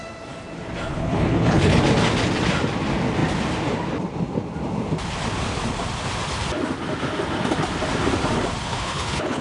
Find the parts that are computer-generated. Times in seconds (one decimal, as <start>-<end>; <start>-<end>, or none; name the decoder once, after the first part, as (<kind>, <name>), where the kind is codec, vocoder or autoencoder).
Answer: 0.9-1.8 (codec, HILCodec); 8.6-9.4